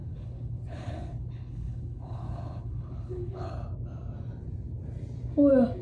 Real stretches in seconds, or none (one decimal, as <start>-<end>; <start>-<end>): 3.5-5.8